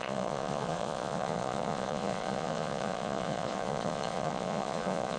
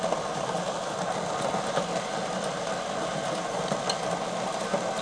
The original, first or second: second